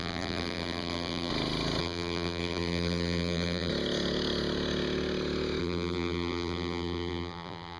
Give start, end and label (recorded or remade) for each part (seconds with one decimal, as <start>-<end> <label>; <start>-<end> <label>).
0.0-1.3 remade; 1.3-1.8 recorded; 1.8-3.7 remade; 3.7-5.6 recorded; 5.6-7.8 remade

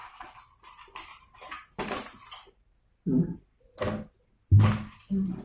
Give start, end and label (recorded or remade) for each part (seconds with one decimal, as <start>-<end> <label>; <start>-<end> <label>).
0.0-0.7 remade; 0.7-1.1 recorded; 1.1-1.8 remade; 1.8-5.4 recorded

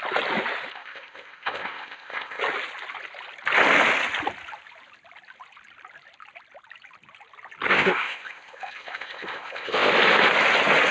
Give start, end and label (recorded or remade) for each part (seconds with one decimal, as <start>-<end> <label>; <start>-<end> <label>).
0.0-0.7 recorded; 0.7-2.4 remade; 2.4-7.7 recorded; 7.7-9.9 remade; 9.9-10.9 recorded

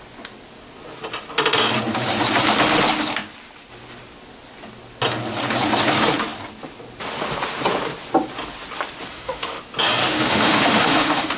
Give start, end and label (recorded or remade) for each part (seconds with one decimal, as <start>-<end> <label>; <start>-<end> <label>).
0.0-9.1 recorded; 9.1-9.6 remade; 9.6-10.0 recorded; 10.0-11.4 remade

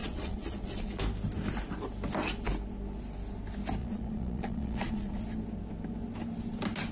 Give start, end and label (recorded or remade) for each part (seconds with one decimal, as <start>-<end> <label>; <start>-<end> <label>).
0.0-0.9 remade; 0.9-3.8 recorded; 3.8-5.2 remade; 5.2-6.9 recorded

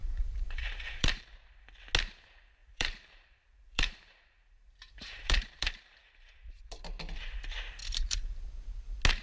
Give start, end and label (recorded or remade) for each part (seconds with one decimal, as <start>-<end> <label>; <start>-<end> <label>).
0.0-1.7 remade; 1.7-2.6 recorded; 2.6-6.9 remade; 6.9-7.8 recorded; 7.8-8.4 remade; 8.4-9.2 recorded